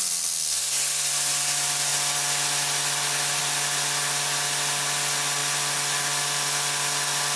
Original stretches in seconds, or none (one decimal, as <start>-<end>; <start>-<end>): 0.0-7.4